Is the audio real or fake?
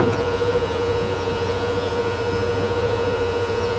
fake